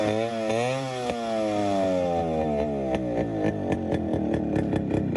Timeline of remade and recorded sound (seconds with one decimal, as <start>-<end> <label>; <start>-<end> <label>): 0.0-5.2 recorded